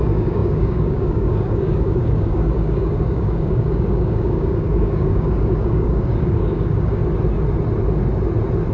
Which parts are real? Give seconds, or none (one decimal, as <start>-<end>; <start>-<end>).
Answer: 7.0-8.7

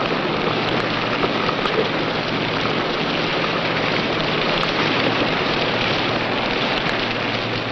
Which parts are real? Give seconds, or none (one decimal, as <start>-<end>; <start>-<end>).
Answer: 0.0-3.3; 6.3-7.7

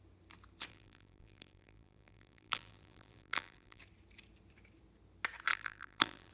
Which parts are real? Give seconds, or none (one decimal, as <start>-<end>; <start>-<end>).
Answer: 0.0-0.7; 3.8-5.5

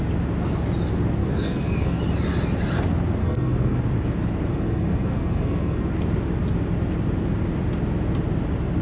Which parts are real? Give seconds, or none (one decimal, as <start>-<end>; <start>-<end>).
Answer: 0.0-1.2; 2.0-3.2; 3.8-4.5; 5.9-8.8

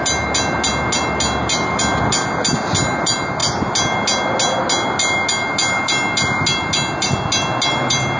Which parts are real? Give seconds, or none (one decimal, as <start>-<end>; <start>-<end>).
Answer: 0.0-8.2